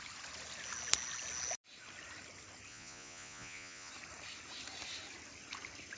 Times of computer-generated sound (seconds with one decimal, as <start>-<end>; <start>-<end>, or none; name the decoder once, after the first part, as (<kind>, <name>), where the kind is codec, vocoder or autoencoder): 2.7-3.9 (vocoder, Vocos)